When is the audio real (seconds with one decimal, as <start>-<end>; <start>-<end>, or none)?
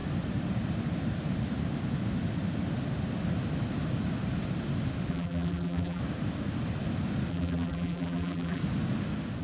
0.0-5.1; 6.0-7.3; 8.6-9.4